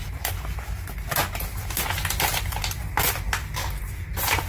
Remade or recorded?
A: recorded